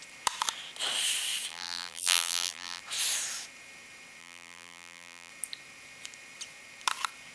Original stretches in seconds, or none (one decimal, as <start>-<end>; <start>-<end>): 0.0-1.5; 2.8-4.2; 5.3-7.3